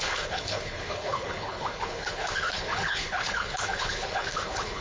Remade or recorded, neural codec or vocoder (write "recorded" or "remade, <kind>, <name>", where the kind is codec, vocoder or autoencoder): remade, codec, HILCodec